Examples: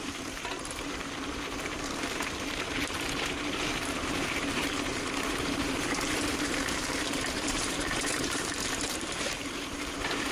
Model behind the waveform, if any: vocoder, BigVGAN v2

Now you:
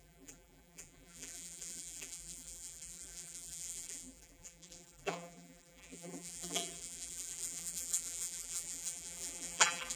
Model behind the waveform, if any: vocoder, BigVGAN v2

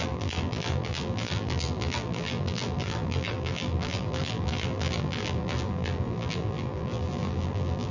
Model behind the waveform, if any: vocoder, BigVGAN v2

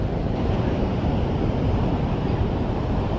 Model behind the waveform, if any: vocoder, BigVGAN v2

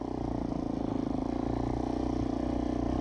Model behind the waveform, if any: none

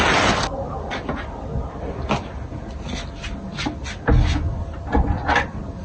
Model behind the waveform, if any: none